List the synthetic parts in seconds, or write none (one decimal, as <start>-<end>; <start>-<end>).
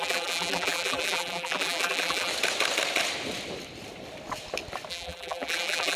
0.0-2.3; 4.9-6.0